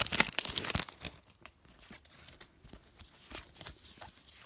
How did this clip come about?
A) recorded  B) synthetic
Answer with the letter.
A